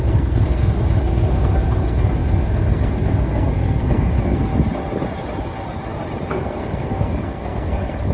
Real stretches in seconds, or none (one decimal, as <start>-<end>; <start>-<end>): 4.5-6.3